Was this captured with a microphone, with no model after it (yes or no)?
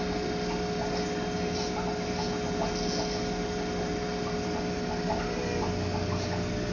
yes